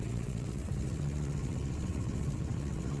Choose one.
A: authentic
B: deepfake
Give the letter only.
B